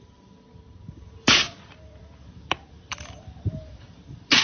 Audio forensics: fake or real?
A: fake